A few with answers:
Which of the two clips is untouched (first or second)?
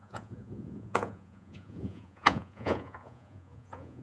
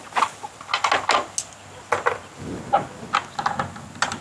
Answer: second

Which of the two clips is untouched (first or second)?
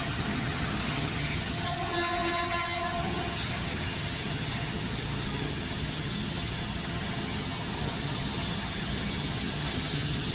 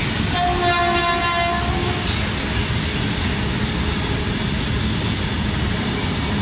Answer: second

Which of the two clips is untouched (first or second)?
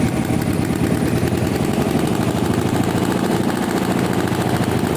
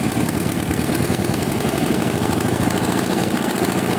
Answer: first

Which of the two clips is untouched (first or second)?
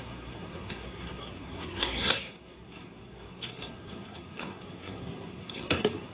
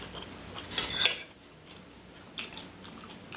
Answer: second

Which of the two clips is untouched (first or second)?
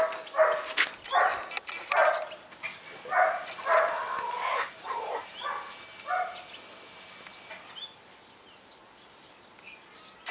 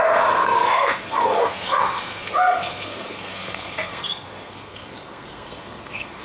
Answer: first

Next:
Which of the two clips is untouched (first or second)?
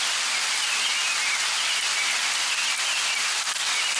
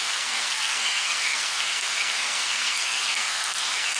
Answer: first